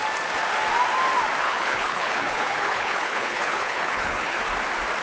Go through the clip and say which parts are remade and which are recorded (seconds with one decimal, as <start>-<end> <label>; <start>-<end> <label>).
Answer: 0.0-1.4 recorded; 1.4-4.4 remade; 4.4-5.0 recorded